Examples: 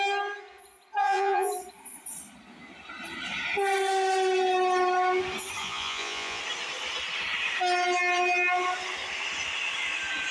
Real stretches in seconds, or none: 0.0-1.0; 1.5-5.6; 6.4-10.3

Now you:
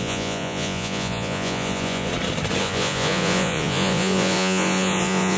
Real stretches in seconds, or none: 2.1-2.6

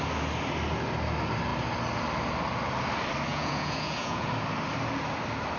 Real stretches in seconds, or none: 0.0-3.3; 4.3-5.6

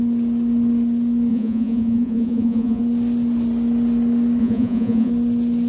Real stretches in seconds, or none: 0.0-1.3; 2.8-4.4; 5.1-5.7

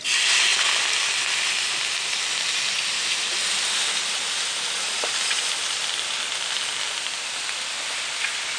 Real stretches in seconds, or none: 0.0-8.6

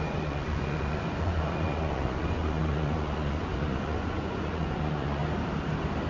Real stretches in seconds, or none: 5.2-6.1

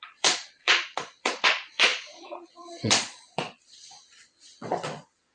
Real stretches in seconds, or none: none

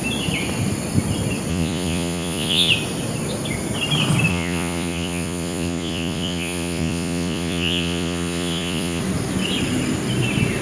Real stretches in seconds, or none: 0.0-1.5; 2.7-4.3; 9.0-10.6